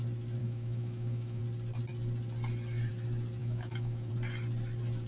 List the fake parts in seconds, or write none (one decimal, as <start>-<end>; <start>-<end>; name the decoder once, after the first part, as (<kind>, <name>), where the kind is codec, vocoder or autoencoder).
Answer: 0.4-1.4 (autoencoder, DAC-VAE); 3.4-4.1